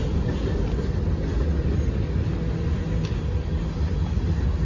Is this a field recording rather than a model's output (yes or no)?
yes